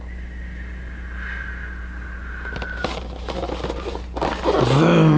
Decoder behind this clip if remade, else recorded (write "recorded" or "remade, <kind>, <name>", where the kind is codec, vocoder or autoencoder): recorded